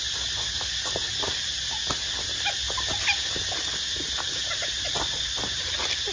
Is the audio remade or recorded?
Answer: recorded